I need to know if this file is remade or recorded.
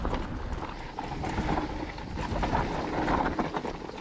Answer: recorded